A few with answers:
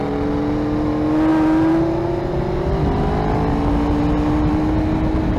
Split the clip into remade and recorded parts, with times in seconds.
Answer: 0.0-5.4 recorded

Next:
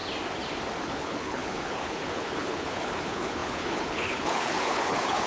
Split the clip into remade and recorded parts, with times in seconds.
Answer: 0.0-0.8 recorded; 0.8-5.3 remade

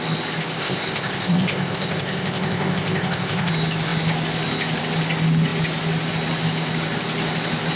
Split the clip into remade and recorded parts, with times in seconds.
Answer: 0.0-0.6 recorded; 0.6-3.5 remade; 3.5-7.8 recorded

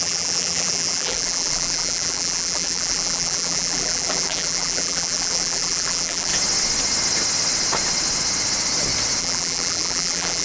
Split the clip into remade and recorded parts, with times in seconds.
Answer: 0.0-6.3 remade; 6.3-9.2 recorded; 9.2-10.4 remade